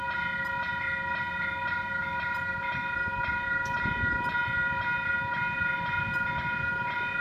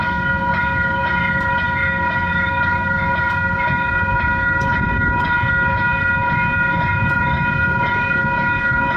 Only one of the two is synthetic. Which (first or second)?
second